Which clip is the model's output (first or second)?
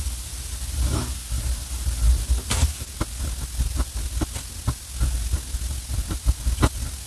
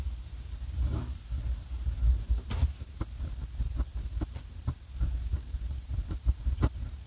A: second